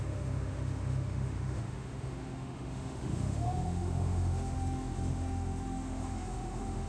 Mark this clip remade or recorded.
remade